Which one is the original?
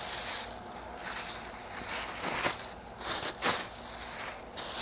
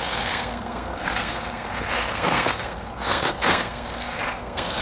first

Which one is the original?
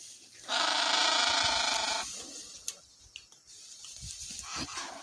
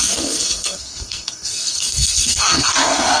first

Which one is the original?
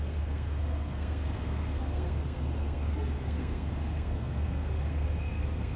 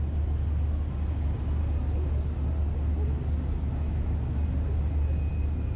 second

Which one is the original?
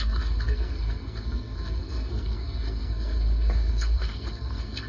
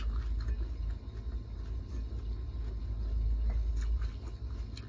second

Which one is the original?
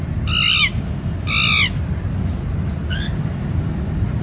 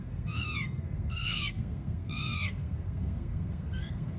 first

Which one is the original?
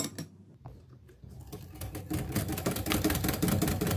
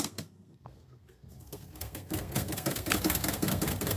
first